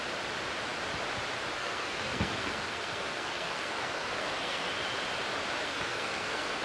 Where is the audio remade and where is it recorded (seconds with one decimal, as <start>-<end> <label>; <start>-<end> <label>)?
0.0-1.6 recorded; 1.6-4.7 remade; 4.7-5.6 recorded; 5.6-6.6 remade

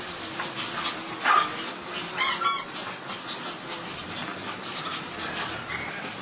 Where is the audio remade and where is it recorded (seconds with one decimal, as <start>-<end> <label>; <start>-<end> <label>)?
0.0-4.3 recorded; 4.3-5.6 remade; 5.6-6.2 recorded